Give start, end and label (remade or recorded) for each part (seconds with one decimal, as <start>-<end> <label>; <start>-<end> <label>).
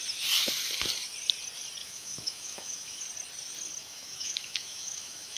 0.0-1.8 recorded; 1.8-3.0 remade; 3.0-3.8 recorded; 3.8-5.4 remade